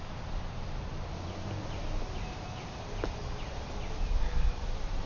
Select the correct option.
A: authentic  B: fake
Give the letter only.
A